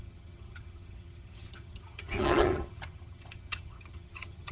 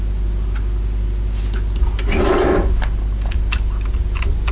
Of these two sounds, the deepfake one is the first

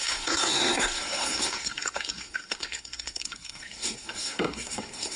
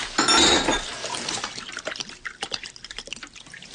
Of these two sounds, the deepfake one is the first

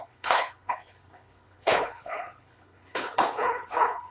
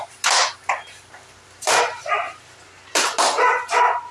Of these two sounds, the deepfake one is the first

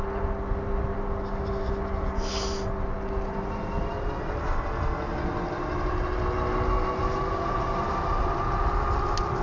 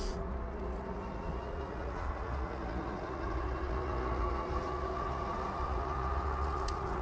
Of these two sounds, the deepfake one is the second